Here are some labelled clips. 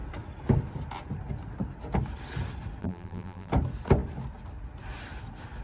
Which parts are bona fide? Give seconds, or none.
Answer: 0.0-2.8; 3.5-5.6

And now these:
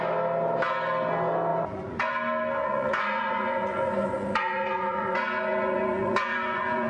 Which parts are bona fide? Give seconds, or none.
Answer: 0.0-1.5; 2.1-2.6